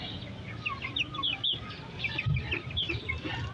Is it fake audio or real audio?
real